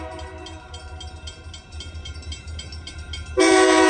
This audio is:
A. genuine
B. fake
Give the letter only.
B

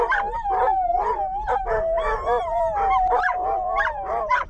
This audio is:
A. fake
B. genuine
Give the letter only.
A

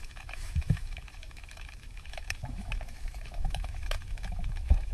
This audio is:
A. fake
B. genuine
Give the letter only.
A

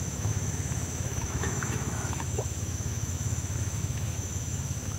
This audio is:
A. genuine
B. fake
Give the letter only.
B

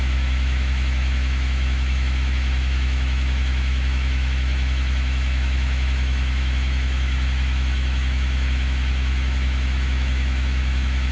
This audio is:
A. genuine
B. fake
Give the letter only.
B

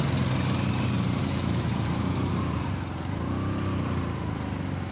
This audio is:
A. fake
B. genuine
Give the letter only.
B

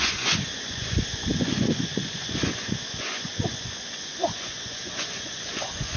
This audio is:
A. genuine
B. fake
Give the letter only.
B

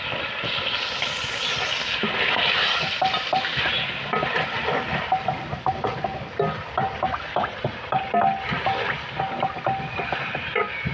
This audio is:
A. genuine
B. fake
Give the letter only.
A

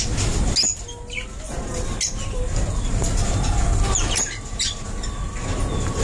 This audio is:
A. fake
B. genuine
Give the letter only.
B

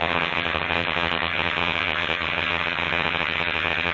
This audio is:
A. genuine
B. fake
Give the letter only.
B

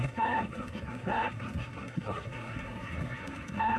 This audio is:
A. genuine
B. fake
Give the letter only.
B